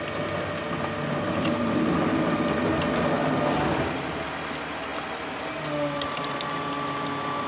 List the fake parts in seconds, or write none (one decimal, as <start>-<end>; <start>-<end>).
none

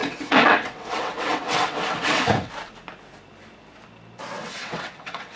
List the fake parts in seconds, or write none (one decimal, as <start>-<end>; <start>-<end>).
0.0-2.5; 4.4-5.4

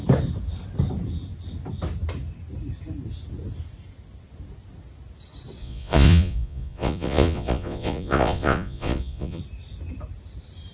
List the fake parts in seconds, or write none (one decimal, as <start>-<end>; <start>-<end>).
5.6-9.4

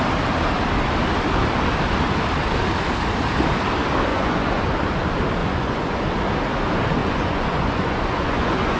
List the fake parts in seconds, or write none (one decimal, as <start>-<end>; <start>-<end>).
4.1-4.6; 5.4-6.0; 7.0-8.8

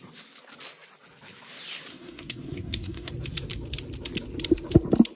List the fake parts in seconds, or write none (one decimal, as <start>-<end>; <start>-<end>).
1.9-3.1